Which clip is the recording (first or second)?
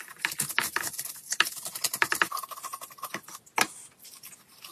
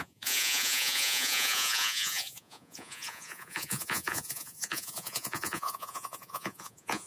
first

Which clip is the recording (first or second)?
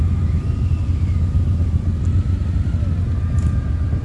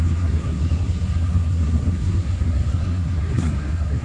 first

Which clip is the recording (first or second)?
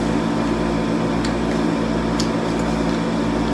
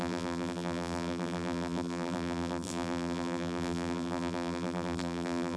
first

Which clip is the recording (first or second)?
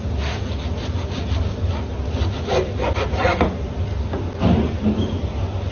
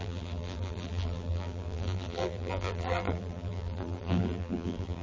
first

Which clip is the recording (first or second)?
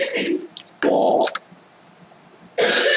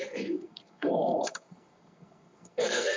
first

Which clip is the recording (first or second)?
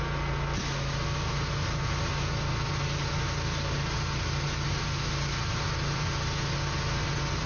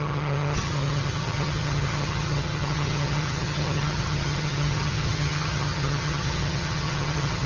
first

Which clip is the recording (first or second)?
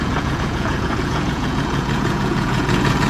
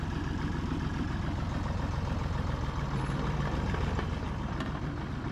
second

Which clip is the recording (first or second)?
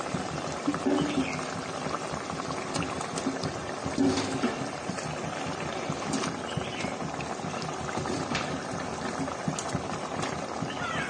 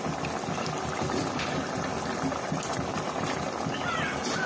second